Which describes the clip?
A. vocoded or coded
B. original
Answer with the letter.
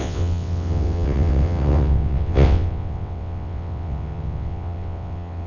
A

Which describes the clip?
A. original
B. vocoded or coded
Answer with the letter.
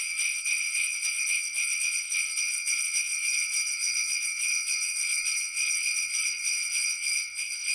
B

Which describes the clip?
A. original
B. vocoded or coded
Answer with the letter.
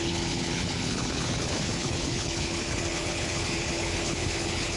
B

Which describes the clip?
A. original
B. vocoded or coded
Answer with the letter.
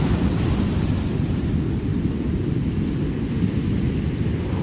B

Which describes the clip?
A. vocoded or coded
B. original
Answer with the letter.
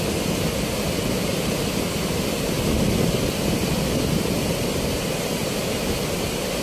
B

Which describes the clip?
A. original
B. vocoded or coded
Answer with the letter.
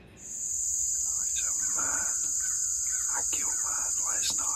A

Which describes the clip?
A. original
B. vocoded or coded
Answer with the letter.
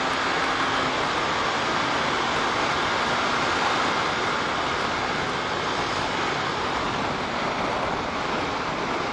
A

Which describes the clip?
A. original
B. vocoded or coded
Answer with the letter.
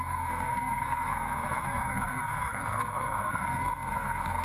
B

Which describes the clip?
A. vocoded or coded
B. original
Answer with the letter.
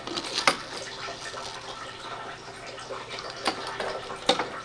B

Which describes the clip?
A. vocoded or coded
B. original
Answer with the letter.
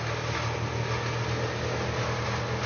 B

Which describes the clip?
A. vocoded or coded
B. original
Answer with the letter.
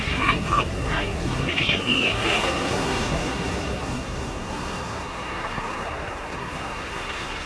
A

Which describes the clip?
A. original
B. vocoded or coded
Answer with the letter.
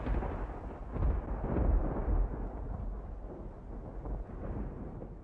A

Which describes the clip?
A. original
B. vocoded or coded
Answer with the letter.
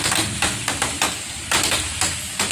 A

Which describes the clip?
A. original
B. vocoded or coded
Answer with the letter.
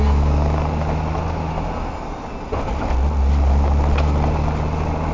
A